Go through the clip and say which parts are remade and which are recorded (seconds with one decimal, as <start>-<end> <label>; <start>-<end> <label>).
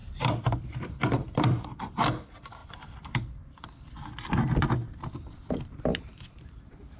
0.0-2.0 remade; 2.0-2.6 recorded; 2.6-5.8 remade; 5.8-7.0 recorded